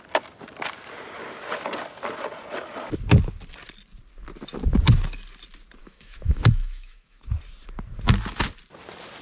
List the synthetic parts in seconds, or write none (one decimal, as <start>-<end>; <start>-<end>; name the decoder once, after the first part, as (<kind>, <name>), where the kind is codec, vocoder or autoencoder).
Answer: 5.8-7.3 (autoencoder, DAC-VAE)